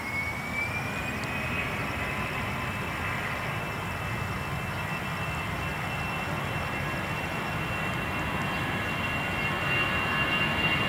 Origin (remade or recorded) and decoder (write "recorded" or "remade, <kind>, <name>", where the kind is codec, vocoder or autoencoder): recorded